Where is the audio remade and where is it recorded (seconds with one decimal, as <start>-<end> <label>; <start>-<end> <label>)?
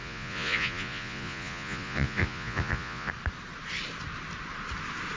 0.0-3.1 remade; 3.1-5.2 recorded